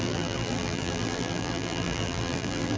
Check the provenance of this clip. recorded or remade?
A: remade